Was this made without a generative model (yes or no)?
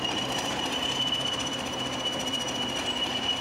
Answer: no